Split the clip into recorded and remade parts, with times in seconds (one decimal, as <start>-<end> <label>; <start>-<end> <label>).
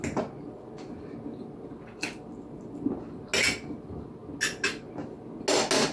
0.0-5.9 recorded